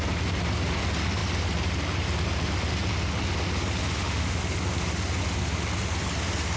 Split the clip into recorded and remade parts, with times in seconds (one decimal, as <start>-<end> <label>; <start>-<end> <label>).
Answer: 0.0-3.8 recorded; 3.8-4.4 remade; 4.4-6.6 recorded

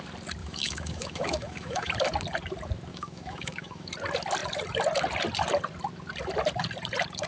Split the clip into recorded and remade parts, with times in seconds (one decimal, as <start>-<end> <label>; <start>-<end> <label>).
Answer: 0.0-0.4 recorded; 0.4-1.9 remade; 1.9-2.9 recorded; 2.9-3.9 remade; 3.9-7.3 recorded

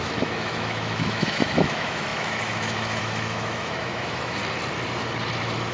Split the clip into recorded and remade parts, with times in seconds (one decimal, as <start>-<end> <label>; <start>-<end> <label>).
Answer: 0.0-4.4 remade; 4.4-5.7 recorded

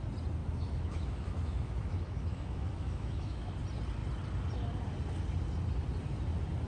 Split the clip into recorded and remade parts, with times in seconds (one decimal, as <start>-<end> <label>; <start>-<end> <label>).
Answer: 0.0-0.4 recorded; 0.4-3.5 remade; 3.5-6.7 recorded

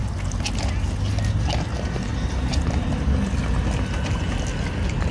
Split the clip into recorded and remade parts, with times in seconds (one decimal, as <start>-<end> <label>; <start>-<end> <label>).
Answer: 0.0-5.1 recorded

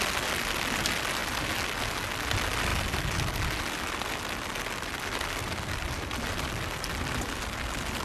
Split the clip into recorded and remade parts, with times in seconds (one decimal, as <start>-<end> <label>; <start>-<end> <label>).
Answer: 0.0-8.0 recorded

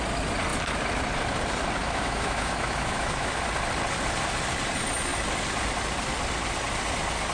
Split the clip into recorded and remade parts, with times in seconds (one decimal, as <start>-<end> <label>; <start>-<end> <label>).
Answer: 0.0-1.8 recorded; 1.8-3.4 remade; 3.4-7.3 recorded